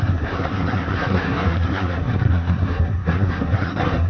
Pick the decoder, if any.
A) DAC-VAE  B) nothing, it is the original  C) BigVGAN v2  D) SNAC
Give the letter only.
D